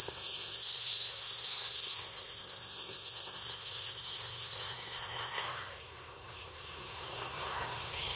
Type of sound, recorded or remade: remade